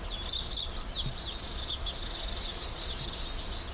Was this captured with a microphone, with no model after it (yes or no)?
yes